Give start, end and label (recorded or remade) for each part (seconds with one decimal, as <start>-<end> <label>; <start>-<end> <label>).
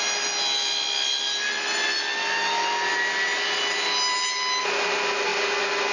0.0-5.9 recorded